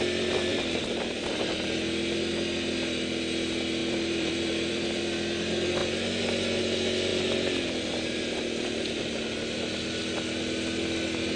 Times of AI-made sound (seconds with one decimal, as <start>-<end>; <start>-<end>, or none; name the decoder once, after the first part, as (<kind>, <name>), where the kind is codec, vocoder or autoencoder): 0.5-1.5 (vocoder, BigVGAN v2); 3.8-5.0; 7.1-9.0